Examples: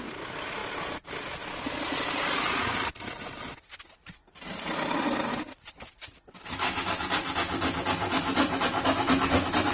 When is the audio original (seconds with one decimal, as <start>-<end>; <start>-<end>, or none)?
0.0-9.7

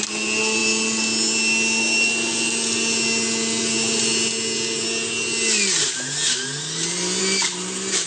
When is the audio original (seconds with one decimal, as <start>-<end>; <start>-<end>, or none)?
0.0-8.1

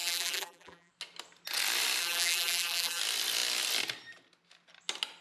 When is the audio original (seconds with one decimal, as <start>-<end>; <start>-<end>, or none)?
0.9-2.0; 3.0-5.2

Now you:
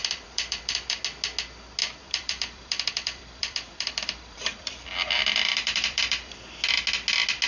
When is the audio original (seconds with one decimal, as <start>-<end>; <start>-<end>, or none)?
1.0-1.8; 6.3-7.5

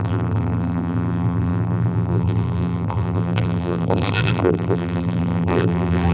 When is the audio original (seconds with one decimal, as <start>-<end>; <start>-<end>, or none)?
none

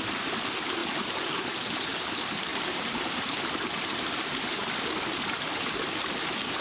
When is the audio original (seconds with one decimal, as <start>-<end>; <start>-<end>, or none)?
0.0-0.8; 2.0-2.5; 3.5-6.6

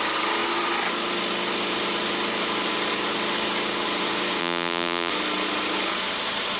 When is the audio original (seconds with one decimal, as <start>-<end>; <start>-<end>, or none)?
0.0-4.4; 5.1-6.6